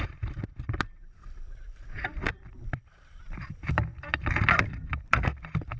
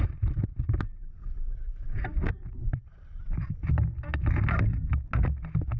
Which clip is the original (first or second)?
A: second